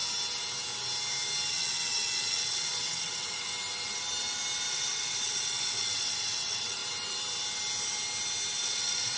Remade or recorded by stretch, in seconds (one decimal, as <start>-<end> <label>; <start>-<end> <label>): 0.0-1.5 recorded; 1.5-3.5 remade; 3.5-4.7 recorded; 4.7-6.8 remade; 6.8-8.6 recorded; 8.6-9.2 remade